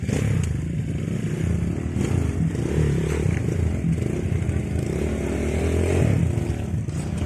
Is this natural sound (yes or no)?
yes